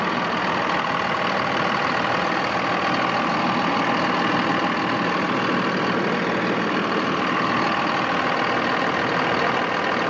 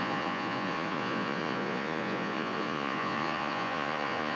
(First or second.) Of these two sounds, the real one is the first